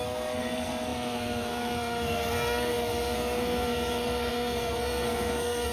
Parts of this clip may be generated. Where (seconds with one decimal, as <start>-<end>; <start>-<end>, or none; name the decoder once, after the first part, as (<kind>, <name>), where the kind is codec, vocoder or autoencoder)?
0.0-5.7 (codec, SNAC)